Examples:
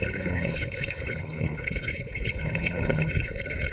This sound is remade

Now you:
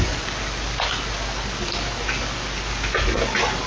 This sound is recorded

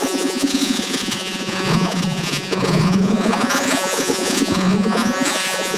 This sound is remade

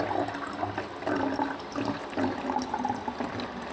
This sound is recorded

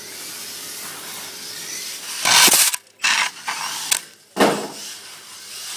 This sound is recorded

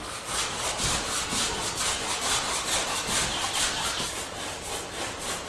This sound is recorded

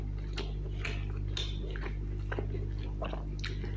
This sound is recorded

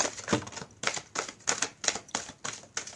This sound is recorded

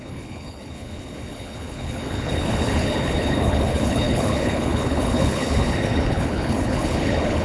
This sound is remade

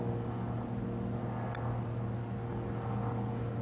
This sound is recorded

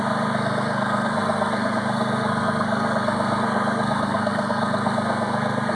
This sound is remade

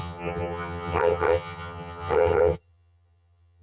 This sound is remade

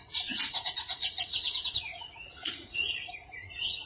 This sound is remade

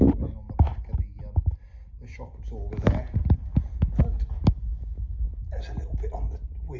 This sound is recorded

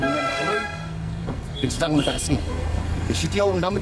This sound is remade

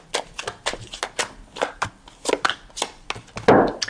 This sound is recorded